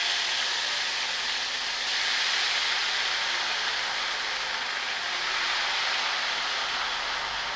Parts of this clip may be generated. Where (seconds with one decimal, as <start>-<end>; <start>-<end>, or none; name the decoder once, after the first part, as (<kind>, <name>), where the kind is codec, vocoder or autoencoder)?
none